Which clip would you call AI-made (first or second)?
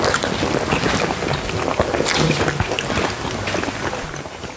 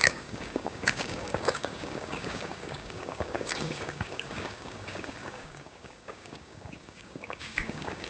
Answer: second